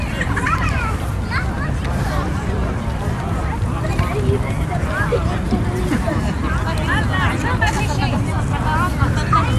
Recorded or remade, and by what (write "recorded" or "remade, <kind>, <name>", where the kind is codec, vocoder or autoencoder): recorded